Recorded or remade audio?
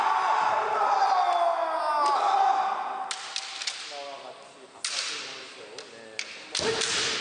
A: recorded